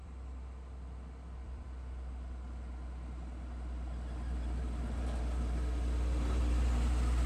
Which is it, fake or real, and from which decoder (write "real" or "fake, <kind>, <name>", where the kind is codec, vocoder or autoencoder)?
fake, vocoder, BigVGAN v2